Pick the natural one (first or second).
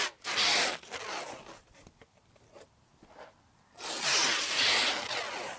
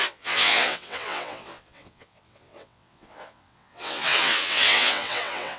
first